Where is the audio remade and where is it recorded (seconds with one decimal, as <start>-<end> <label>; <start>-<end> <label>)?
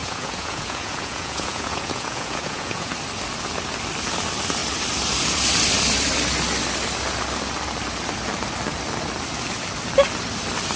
0.0-2.9 remade; 2.9-10.8 recorded